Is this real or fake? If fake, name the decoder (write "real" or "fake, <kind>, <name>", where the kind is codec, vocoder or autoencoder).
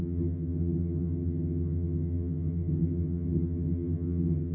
fake, vocoder, HiFi-GAN